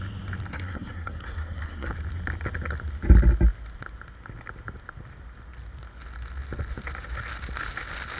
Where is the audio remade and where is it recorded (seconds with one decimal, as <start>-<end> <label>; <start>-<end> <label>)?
0.0-0.5 recorded; 0.5-1.9 remade; 1.9-8.2 recorded